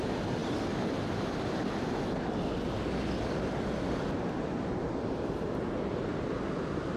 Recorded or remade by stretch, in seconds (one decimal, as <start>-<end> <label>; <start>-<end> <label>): 0.0-0.4 remade; 0.4-4.6 recorded; 4.6-6.1 remade; 6.1-7.0 recorded